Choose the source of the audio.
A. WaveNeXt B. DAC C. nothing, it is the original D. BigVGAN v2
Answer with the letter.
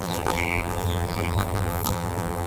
D